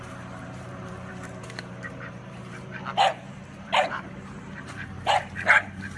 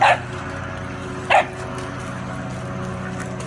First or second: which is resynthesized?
first